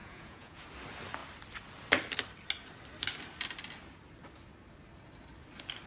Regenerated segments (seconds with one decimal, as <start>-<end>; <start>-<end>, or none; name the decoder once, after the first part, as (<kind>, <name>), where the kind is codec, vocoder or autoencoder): 0.0-0.6 (vocoder, Vocos)